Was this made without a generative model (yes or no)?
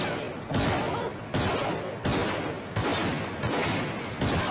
yes